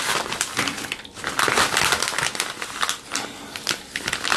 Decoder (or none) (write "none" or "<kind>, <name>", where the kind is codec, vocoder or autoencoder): none